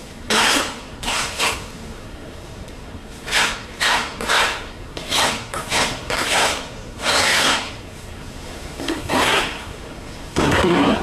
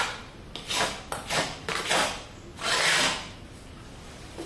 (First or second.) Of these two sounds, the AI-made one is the first